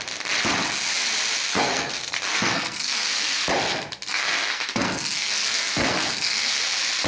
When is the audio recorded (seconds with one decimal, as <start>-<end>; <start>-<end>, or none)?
0.0-1.5; 3.4-4.1; 6.6-7.1